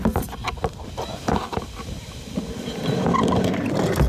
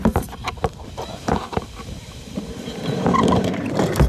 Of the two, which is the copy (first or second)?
second